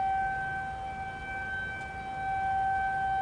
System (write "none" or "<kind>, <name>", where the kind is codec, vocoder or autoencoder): none